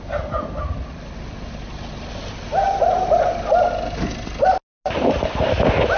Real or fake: real